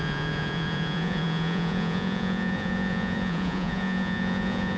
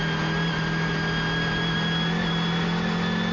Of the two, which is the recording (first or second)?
second